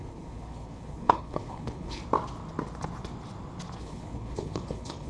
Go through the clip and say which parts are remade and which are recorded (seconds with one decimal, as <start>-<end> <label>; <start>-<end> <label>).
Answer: 0.0-2.0 remade; 2.0-3.8 recorded; 3.8-5.1 remade